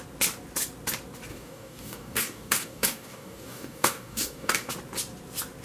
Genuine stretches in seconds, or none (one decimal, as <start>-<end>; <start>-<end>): 0.0-1.3; 4.7-5.6